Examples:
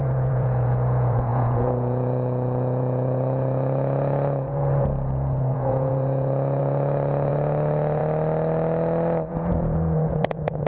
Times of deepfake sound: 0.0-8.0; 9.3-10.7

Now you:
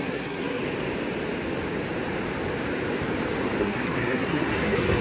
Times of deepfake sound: 0.0-0.6; 3.6-5.0

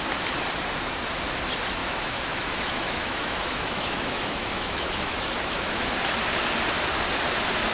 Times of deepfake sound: 1.8-5.8

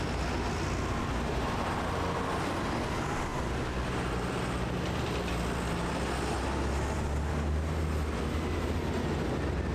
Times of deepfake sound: none